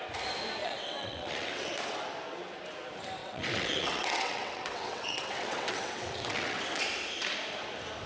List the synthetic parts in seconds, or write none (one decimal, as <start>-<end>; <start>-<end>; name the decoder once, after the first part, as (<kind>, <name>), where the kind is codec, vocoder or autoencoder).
0.6-1.7 (vocoder, WaveNeXt); 3.2-6.6